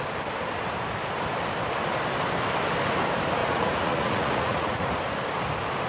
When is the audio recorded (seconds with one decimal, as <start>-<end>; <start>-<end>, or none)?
0.0-3.4; 4.9-5.9